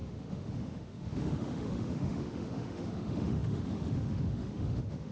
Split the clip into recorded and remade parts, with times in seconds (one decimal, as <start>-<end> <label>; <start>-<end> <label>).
0.0-5.1 remade

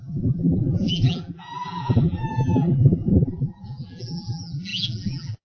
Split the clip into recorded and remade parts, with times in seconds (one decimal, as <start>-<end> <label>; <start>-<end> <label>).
0.0-5.4 remade

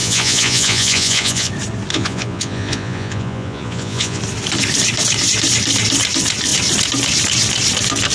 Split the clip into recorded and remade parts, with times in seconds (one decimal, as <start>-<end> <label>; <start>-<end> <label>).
0.0-1.5 remade; 1.5-1.9 recorded; 1.9-4.2 remade; 4.2-8.1 recorded

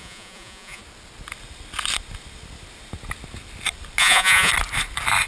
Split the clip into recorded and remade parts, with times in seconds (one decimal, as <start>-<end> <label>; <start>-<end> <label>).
0.0-0.8 remade; 0.8-4.0 recorded; 4.0-4.5 remade; 4.5-5.3 recorded

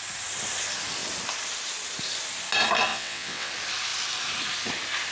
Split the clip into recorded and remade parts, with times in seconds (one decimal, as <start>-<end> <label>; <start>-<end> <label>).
0.0-2.9 recorded; 2.9-3.5 remade; 3.5-5.1 recorded